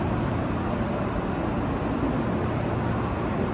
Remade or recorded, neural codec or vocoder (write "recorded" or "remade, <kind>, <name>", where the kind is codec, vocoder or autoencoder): recorded